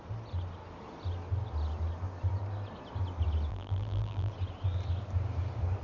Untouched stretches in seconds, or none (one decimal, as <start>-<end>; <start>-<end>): 0.0-3.5; 4.3-5.8